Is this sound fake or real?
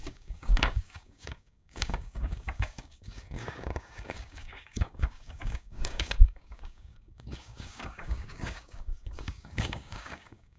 fake